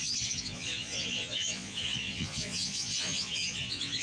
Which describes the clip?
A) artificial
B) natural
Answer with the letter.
A